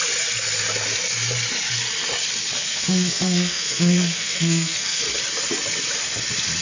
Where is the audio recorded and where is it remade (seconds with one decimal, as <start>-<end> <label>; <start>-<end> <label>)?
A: 0.0-2.6 recorded; 2.6-5.0 remade; 5.0-6.6 recorded